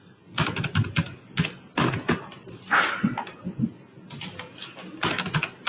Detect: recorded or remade recorded